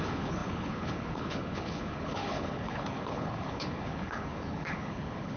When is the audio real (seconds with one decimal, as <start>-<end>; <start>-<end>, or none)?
none